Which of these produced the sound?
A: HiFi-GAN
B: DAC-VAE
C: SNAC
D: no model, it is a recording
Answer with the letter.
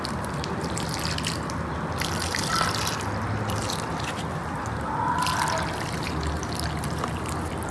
D